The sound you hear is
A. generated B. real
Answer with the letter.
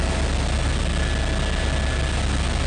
B